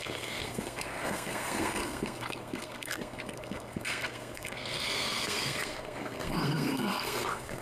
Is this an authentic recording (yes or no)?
no